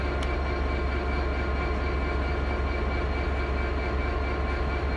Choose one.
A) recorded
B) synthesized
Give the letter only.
A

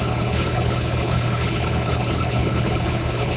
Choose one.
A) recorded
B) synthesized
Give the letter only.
B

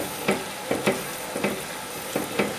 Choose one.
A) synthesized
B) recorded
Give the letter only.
B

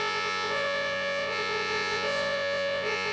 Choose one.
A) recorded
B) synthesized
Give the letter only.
B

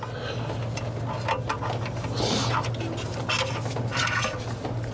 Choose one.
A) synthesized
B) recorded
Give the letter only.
B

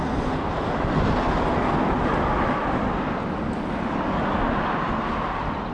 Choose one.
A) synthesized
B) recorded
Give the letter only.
B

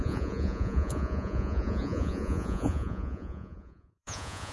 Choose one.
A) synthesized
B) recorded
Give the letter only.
A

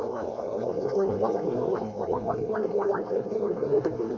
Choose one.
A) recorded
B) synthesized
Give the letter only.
B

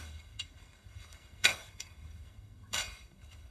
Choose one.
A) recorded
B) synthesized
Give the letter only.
B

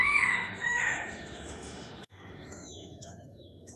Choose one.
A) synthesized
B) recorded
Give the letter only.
A